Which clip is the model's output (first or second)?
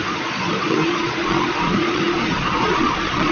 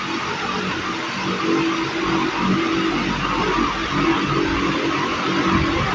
first